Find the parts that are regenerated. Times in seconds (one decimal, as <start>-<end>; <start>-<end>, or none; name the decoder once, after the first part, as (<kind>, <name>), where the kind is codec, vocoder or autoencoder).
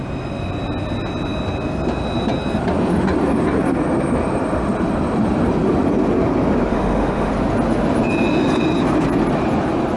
6.7-7.3 (autoencoder, DAC-VAE)